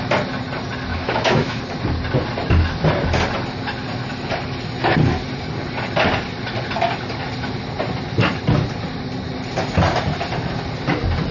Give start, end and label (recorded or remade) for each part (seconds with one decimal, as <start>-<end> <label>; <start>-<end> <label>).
0.0-0.9 recorded; 0.9-1.6 remade; 1.6-11.3 recorded